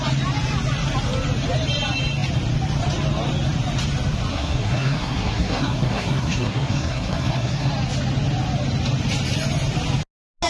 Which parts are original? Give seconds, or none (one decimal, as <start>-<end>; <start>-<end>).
0.0-4.3; 7.7-10.5